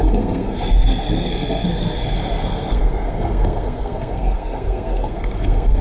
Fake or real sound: fake